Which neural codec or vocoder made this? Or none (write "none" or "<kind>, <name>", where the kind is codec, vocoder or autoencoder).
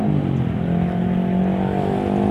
none